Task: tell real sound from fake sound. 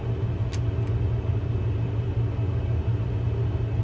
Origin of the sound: real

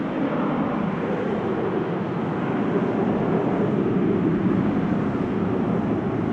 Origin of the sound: real